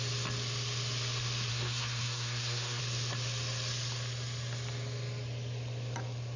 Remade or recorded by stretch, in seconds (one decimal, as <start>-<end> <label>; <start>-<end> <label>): 0.0-1.5 recorded; 1.5-2.8 remade; 2.8-6.4 recorded